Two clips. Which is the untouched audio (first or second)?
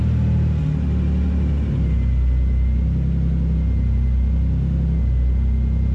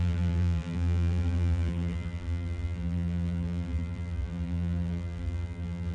first